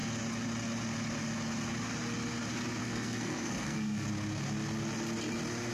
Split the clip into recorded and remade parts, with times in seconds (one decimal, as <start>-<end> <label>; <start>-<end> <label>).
0.0-2.8 recorded; 2.8-4.1 remade; 4.1-5.7 recorded